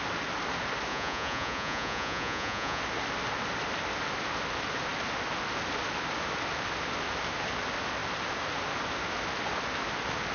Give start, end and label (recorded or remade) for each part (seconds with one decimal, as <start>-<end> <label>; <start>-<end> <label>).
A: 0.0-0.9 recorded; 0.9-2.8 remade; 2.8-10.3 recorded